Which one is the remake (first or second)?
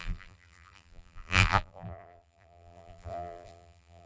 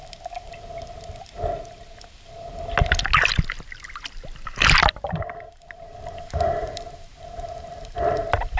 first